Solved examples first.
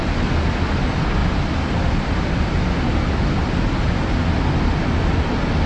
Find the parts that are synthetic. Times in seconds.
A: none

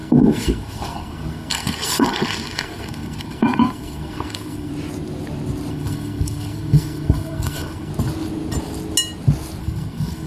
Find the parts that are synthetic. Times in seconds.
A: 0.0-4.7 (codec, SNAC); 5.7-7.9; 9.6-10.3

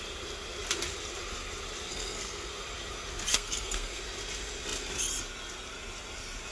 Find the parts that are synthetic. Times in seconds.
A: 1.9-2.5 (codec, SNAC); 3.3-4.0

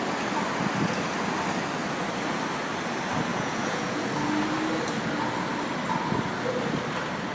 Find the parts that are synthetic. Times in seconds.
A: 3.3-4.0 (vocoder, Vocos)

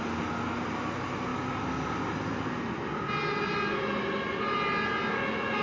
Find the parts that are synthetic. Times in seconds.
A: none

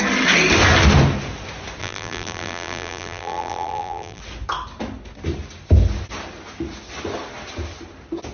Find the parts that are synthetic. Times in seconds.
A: 1.8-4.2 (vocoder, BigVGAN v2)